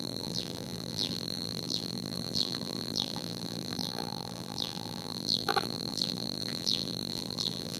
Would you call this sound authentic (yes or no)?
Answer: no